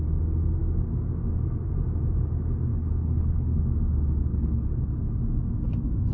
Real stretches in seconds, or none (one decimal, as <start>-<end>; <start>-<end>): 0.0-2.7; 3.6-4.3; 5.2-6.1